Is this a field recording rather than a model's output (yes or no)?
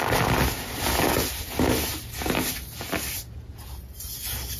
yes